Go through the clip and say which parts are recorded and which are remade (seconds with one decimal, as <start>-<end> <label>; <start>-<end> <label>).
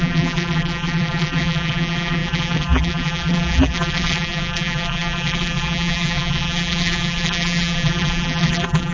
0.0-8.9 remade